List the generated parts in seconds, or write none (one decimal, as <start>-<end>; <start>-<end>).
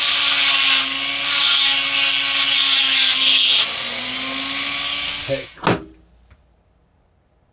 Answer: none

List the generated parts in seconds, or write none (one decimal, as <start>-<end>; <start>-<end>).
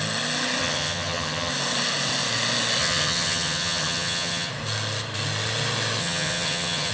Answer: 0.6-1.5; 2.8-4.5; 6.0-6.9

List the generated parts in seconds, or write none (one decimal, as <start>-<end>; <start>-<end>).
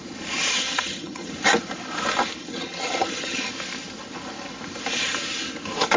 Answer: 0.5-1.3; 2.4-3.5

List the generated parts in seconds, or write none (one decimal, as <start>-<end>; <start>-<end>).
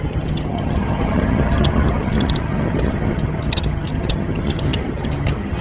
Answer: 0.0-5.6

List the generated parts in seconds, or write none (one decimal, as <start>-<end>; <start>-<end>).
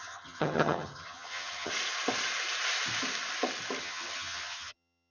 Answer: 0.0-1.7; 3.8-5.1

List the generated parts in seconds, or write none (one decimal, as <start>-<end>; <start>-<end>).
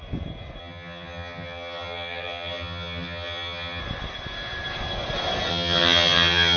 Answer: 0.6-3.8; 5.5-6.6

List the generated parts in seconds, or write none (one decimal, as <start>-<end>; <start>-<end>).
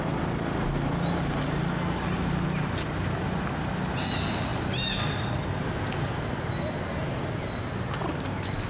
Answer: none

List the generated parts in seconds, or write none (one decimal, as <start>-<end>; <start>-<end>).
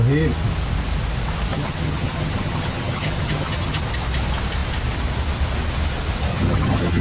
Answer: 1.5-3.8; 6.3-7.0